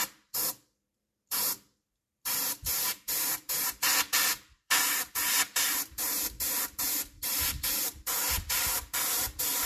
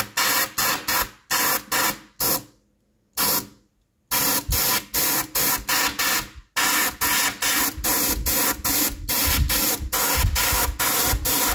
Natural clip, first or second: second